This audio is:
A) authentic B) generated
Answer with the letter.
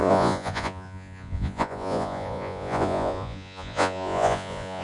B